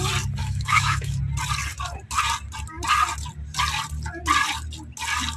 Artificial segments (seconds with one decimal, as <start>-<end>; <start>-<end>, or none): 0.4-1.2